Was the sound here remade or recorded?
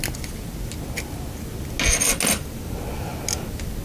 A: recorded